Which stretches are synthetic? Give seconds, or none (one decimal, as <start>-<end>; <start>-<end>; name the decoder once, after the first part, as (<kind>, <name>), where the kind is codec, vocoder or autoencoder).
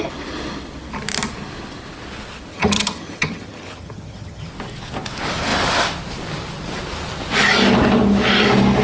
2.5-4.5 (vocoder, HiFi-GAN)